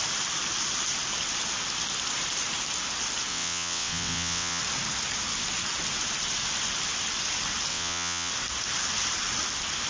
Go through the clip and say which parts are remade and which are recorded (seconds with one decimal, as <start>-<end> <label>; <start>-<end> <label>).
0.0-3.3 recorded; 3.3-4.6 remade; 4.6-7.7 recorded; 7.7-8.3 remade; 8.3-9.9 recorded